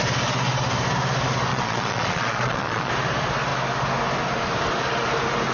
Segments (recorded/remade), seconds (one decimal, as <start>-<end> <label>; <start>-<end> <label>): 0.0-1.5 recorded; 1.5-2.9 remade; 2.9-5.5 recorded